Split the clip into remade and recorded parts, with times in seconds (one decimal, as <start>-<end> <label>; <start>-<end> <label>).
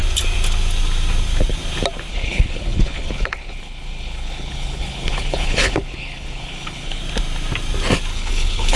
0.0-2.1 recorded; 2.1-7.0 remade; 7.0-8.1 recorded; 8.1-8.8 remade